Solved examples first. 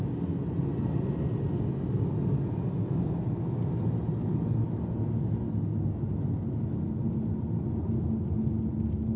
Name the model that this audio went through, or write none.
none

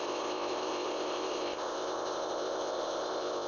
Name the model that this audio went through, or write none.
codec, ZipCodec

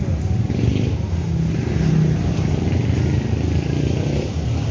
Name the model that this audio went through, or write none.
none